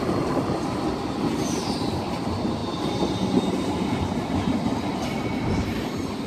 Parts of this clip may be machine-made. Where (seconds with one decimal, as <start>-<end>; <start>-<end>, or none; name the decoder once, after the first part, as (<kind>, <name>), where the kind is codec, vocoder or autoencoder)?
none